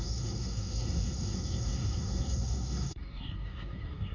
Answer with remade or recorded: remade